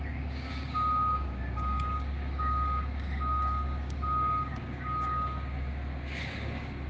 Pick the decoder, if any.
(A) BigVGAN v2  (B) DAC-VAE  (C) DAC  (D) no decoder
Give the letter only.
C